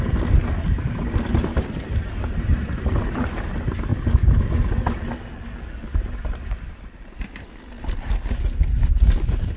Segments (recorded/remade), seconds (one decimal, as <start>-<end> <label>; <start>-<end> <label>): 0.0-1.5 recorded; 1.5-3.5 remade; 3.5-5.9 recorded; 5.9-7.5 remade; 7.5-9.6 recorded